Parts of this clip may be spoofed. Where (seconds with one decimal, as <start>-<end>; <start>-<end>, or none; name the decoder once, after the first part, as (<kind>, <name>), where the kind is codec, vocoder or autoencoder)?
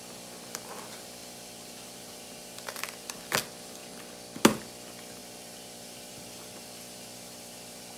1.2-3.2 (vocoder, BigVGAN v2); 5.2-8.0